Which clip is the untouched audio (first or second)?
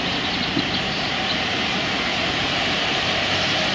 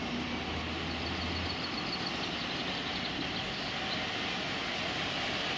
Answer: second